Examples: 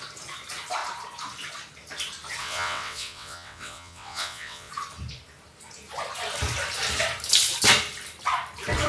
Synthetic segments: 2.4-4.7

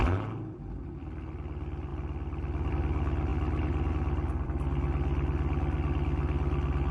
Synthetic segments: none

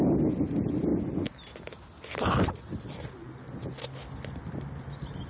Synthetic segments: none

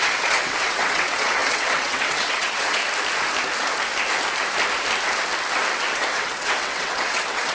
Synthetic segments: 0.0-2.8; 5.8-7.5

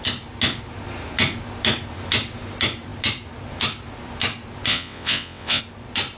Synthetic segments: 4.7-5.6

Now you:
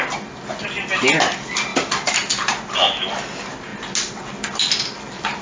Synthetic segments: none

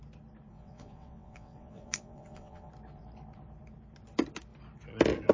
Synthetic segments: 0.5-2.7